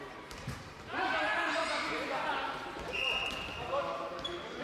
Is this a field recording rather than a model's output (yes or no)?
no